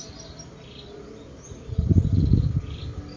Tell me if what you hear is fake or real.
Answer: real